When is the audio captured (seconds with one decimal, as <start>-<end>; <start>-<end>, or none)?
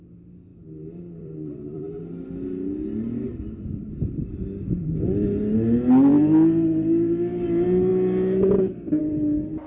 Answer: 0.0-0.5; 2.0-3.4; 4.9-9.7